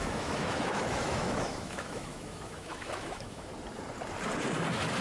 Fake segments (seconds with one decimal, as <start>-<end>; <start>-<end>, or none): 0.0-3.5